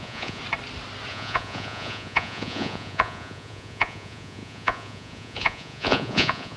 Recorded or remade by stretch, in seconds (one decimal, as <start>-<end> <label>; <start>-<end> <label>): 0.0-0.4 remade; 0.4-1.1 recorded; 1.1-6.6 remade